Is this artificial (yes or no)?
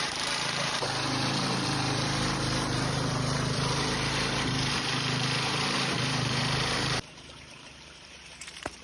yes